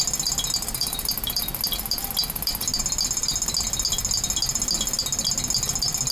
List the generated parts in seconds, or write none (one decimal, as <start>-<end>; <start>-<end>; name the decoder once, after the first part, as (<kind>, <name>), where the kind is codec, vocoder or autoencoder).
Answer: none